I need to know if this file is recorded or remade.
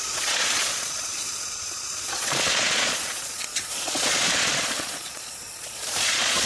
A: remade